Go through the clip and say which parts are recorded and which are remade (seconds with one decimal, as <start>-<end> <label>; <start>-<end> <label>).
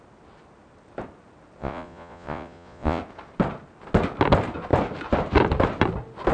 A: 0.0-1.6 recorded; 1.6-3.0 remade; 3.0-6.3 recorded